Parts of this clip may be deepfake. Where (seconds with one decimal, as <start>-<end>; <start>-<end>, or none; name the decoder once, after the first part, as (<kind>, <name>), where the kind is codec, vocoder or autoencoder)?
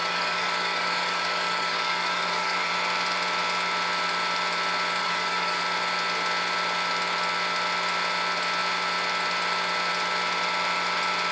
0.0-2.7 (codec, DAC); 5.0-5.6